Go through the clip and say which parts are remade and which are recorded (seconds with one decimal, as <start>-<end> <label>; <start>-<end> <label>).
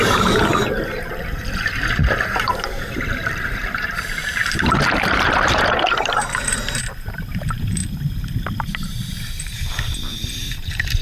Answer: 0.0-7.8 remade; 7.8-9.1 recorded; 9.1-9.7 remade; 9.7-10.5 recorded; 10.5-11.0 remade